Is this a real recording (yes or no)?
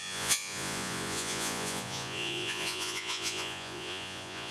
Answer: no